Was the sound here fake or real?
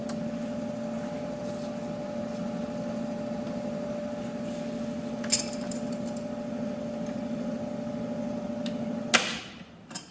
real